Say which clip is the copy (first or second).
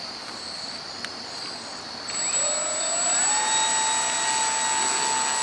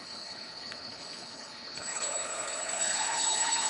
second